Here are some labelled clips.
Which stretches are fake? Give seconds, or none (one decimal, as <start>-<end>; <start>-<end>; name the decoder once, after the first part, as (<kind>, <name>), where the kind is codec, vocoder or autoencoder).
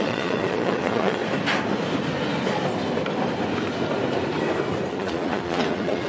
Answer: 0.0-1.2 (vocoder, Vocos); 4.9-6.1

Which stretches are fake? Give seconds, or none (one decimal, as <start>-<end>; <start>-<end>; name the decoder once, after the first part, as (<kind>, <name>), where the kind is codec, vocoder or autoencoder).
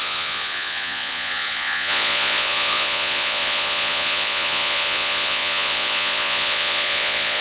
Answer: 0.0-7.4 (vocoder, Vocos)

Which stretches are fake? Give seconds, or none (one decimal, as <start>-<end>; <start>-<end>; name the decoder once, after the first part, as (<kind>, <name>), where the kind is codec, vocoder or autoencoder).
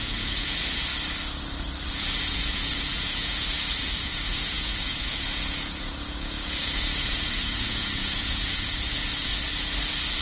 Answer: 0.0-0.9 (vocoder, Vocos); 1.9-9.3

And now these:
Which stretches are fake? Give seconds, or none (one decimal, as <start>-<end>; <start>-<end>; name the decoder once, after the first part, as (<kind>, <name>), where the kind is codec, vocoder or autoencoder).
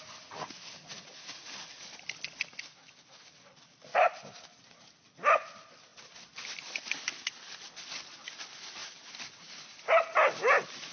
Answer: none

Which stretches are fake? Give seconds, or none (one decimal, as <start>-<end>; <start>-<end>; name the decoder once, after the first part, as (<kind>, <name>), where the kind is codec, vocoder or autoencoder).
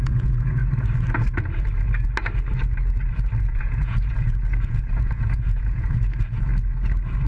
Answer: 0.0-0.6 (vocoder, Vocos); 3.4-6.5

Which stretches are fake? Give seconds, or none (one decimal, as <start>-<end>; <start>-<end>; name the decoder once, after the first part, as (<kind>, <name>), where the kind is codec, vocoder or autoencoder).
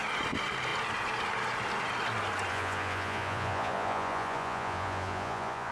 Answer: 2.5-5.7 (vocoder, Vocos)